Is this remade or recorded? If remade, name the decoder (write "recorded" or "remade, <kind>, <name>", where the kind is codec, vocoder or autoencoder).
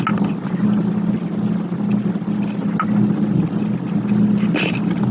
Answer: recorded